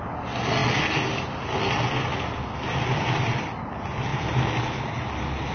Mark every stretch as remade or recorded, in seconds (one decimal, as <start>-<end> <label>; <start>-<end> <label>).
0.0-5.5 recorded